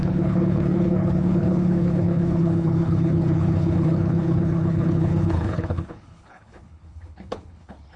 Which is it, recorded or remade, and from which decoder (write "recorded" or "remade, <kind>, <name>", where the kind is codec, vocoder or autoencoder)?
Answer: remade, codec, HILCodec